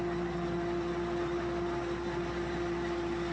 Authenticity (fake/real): real